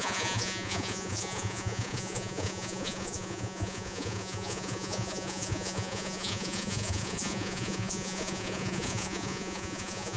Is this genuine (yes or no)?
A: no